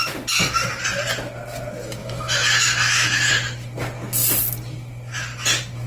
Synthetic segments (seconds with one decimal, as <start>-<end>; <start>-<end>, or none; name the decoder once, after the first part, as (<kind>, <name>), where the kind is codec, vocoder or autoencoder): 2.0-3.3 (autoencoder, DAC-VAE)